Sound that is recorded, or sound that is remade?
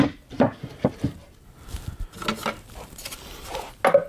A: recorded